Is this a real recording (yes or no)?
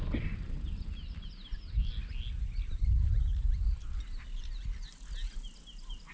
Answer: yes